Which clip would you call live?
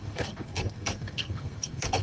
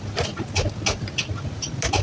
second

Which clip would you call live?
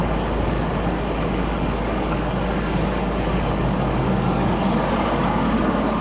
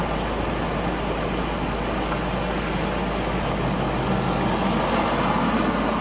second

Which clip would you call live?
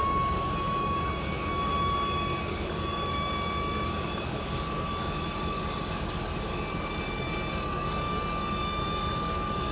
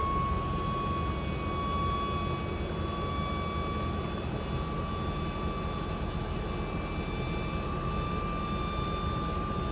second